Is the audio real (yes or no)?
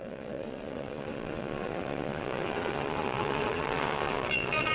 no